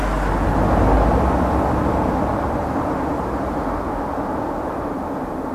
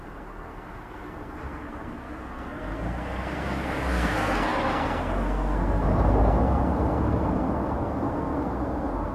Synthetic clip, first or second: second